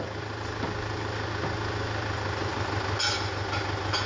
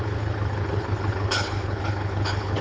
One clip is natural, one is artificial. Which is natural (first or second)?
first